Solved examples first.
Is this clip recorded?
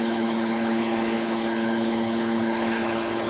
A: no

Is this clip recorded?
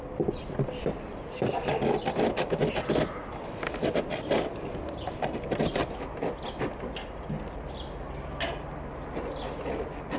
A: yes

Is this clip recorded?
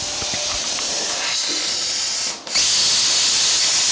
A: yes